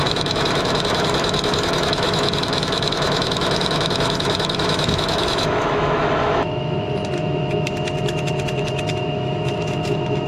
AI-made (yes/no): yes